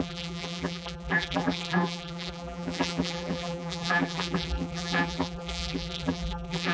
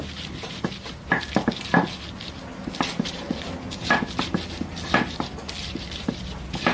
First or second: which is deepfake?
first